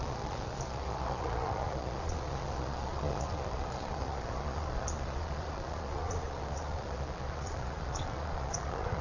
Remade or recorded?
remade